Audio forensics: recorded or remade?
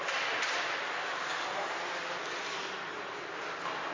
recorded